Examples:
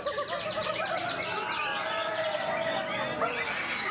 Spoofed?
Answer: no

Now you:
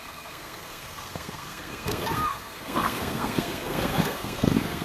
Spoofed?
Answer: yes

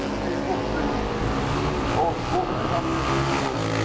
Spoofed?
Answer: no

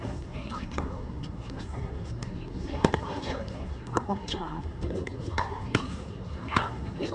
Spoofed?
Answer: yes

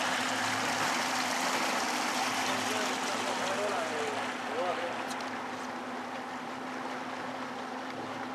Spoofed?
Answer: no